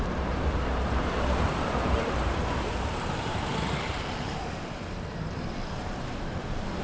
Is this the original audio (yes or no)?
no